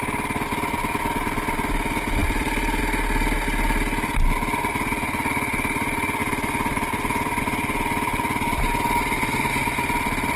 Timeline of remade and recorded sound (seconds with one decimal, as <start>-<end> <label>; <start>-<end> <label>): 0.0-6.2 recorded; 6.2-7.4 remade; 7.4-10.4 recorded